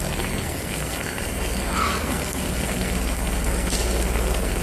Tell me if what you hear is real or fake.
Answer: fake